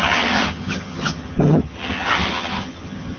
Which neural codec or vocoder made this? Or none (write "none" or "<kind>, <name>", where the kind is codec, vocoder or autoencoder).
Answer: vocoder, HiFi-GAN